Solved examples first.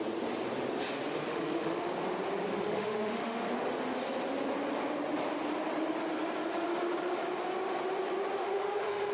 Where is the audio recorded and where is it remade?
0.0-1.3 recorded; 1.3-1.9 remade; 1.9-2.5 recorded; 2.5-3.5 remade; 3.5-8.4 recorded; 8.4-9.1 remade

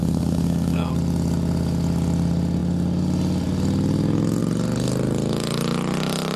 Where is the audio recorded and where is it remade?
0.0-0.9 remade; 0.9-6.4 recorded

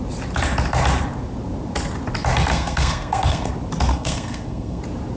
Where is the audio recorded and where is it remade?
0.0-2.5 recorded; 2.5-3.5 remade; 3.5-3.9 recorded; 3.9-4.8 remade; 4.8-5.2 recorded

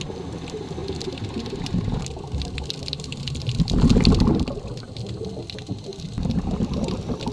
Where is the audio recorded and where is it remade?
0.0-7.3 recorded

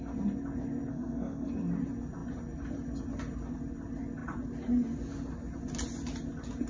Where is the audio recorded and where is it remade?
0.0-0.9 recorded; 0.9-1.5 remade; 1.5-6.7 recorded

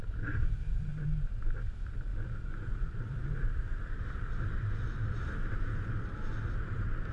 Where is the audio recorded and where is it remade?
0.0-0.9 remade; 0.9-1.5 recorded; 1.5-2.1 remade; 2.1-4.0 recorded; 4.0-5.4 remade; 5.4-7.1 recorded

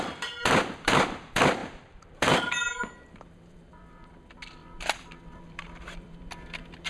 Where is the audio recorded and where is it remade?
0.0-6.9 remade

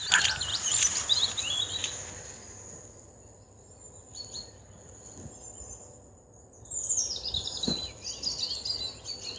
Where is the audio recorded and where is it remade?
0.0-0.5 recorded; 0.5-1.3 remade; 1.3-9.4 recorded